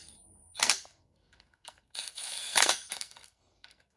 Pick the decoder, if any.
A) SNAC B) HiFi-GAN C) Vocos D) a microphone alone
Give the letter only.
A